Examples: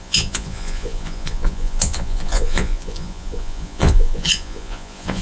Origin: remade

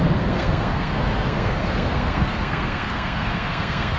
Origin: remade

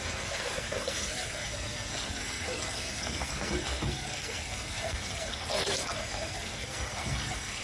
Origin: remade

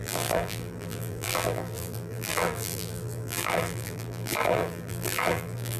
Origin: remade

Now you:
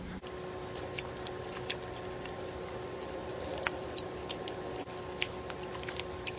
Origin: recorded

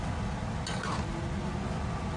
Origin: recorded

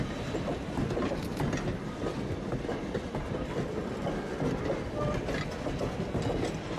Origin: recorded